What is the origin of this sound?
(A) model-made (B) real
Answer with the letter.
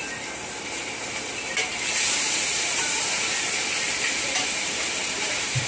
A